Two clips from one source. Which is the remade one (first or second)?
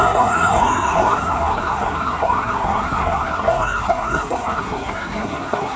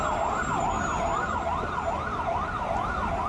first